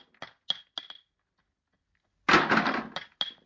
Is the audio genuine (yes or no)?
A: yes